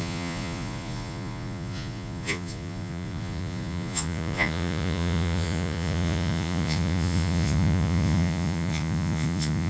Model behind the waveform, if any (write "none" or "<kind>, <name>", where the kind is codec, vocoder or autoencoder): vocoder, Vocos